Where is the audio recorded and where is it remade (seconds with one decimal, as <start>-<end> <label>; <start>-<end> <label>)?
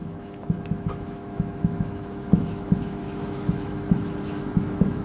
0.0-5.0 remade